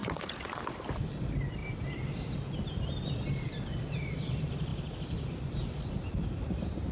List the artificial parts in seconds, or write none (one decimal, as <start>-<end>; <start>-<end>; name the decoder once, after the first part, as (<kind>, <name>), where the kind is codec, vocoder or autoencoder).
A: 0.0-0.6 (vocoder, Vocos)